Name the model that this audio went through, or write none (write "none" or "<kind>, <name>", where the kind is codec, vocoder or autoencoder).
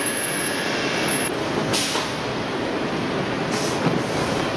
none